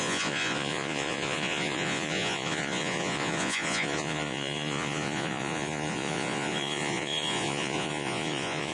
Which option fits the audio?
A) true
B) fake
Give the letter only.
B